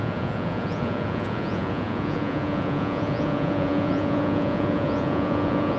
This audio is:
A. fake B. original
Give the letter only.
A